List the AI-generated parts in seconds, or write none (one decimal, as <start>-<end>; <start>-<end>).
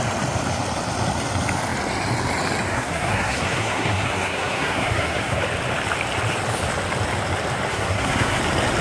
2.7-5.4; 7.7-8.4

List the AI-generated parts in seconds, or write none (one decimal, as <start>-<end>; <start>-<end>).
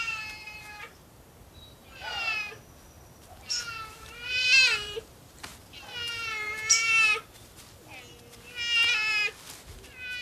0.0-1.8; 3.9-5.5; 6.1-7.1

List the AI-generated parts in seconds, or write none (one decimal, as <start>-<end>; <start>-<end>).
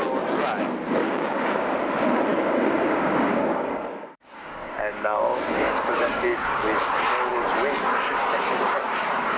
1.0-1.8; 2.3-6.4